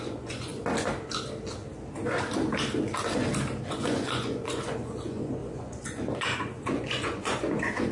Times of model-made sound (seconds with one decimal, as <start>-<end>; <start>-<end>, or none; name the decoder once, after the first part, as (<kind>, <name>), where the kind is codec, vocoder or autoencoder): 0.0-0.5 (vocoder, Vocos); 3.7-7.9